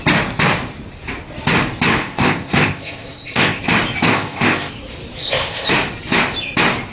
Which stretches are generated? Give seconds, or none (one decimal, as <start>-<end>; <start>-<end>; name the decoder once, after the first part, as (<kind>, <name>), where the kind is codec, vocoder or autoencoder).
2.0-3.6 (codec, ZipCodec); 4.1-4.7; 5.2-5.7